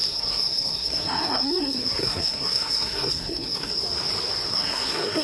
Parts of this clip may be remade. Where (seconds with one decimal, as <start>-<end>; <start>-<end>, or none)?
0.0-3.7; 4.5-5.2